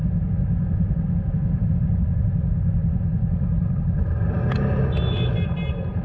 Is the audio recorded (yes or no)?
yes